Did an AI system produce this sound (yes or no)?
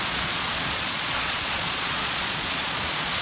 yes